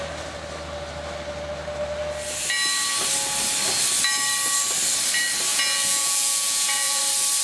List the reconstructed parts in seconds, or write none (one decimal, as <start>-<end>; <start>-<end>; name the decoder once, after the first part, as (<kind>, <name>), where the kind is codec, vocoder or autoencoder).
5.5-7.0 (vocoder, Vocos)